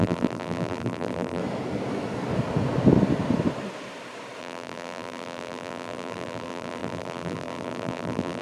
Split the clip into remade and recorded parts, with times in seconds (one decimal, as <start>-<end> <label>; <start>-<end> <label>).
0.0-1.4 remade; 1.4-4.4 recorded; 4.4-8.4 remade

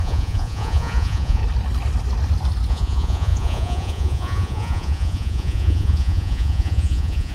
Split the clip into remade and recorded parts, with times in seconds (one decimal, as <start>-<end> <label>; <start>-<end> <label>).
0.0-1.4 remade; 1.4-2.7 recorded; 2.7-7.3 remade